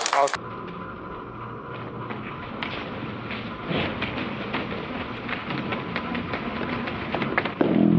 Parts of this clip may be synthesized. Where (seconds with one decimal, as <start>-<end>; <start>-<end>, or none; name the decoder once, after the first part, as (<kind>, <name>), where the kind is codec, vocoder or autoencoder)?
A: none